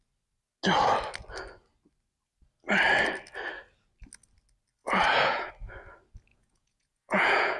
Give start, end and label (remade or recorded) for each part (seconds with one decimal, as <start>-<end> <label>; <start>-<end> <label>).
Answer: 0.0-4.8 recorded; 4.8-5.5 remade; 5.5-6.3 recorded; 6.3-7.6 remade